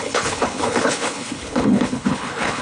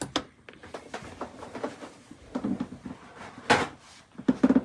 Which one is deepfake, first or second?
first